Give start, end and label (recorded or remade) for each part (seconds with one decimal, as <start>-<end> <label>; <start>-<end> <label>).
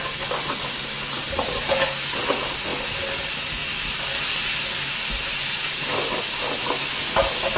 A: 0.0-7.6 recorded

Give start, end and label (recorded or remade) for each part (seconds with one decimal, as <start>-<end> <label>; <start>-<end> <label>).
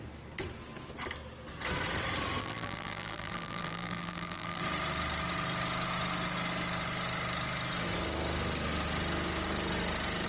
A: 0.0-2.4 recorded; 2.4-4.6 remade; 4.6-10.3 recorded